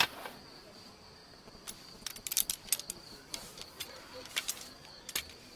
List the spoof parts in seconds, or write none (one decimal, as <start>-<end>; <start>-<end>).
none